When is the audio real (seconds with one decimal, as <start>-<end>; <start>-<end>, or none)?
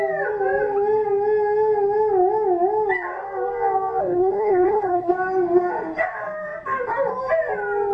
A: 0.0-4.0; 5.1-7.9